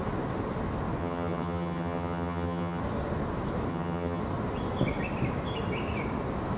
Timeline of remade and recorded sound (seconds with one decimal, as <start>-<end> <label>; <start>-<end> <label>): 0.0-1.0 recorded; 1.0-2.8 remade; 2.8-3.7 recorded; 3.7-4.2 remade; 4.2-6.6 recorded